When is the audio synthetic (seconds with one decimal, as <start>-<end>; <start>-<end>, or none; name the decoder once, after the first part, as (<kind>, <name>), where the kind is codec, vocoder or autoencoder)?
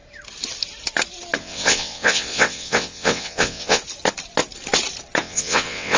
1.4-3.8 (vocoder, WaveNeXt); 5.2-6.0